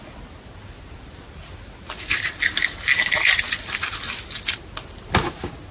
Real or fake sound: real